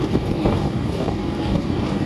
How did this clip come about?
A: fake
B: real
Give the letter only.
A